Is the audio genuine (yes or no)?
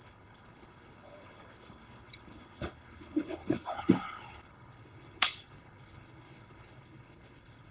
no